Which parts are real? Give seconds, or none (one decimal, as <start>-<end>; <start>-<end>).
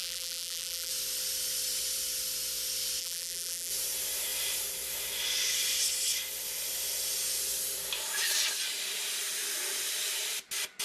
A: 0.9-3.0; 3.7-10.8